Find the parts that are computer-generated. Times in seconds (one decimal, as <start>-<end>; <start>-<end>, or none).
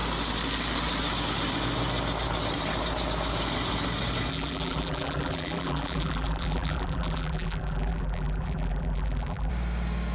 4.3-9.5